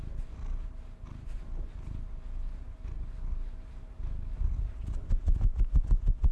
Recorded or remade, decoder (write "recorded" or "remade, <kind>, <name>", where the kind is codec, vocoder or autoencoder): recorded